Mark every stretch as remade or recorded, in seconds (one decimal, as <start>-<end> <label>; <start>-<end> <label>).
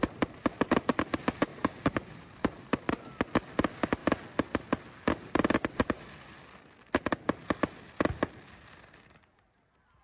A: 0.0-1.5 recorded; 1.5-2.8 remade; 2.8-10.0 recorded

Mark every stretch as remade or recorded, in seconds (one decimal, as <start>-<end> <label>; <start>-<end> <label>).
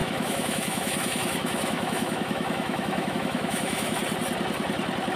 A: 0.0-4.0 remade; 4.0-5.2 recorded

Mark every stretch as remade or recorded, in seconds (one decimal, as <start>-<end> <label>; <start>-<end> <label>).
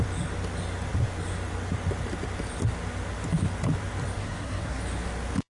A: 0.0-4.2 recorded; 4.2-4.8 remade; 4.8-5.5 recorded